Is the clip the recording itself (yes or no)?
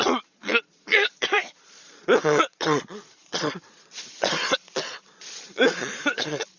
no